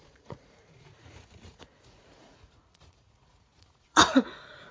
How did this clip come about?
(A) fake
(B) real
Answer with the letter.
A